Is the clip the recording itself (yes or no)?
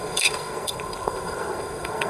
no